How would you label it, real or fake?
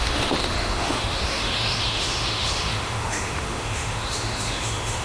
fake